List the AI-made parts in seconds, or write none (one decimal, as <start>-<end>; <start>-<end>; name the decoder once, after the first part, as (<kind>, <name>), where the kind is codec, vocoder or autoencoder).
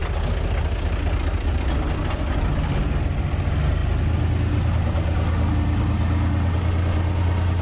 none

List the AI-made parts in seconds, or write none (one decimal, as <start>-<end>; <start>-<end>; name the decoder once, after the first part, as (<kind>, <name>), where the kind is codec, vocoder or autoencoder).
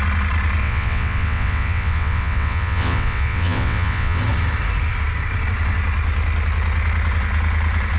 0.6-4.2 (vocoder, WaveNeXt)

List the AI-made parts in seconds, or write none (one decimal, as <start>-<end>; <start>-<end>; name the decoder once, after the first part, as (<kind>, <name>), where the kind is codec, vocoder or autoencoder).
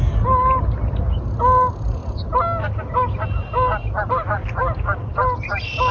none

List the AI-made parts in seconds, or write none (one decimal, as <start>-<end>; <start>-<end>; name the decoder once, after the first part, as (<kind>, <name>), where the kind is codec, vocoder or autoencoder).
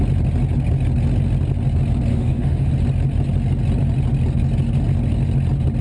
2.1-2.7 (autoencoder, DAC-VAE)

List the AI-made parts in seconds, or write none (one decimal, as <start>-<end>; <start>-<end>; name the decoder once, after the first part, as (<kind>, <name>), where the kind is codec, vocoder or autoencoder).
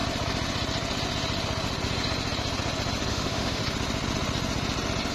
3.1-3.6 (autoencoder, DAC-VAE)